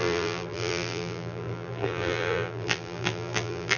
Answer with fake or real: fake